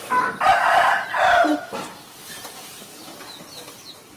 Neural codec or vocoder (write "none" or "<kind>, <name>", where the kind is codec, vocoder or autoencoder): none